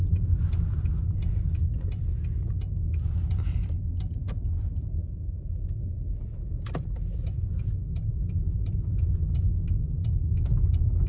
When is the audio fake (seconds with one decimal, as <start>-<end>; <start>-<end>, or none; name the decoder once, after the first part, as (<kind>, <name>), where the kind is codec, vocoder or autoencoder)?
8.1-9.0 (vocoder, BigVGAN v2)